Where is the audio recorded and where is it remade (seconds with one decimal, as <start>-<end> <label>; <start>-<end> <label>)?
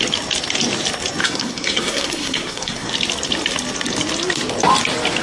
0.0-1.2 recorded; 1.2-2.9 remade; 2.9-5.2 recorded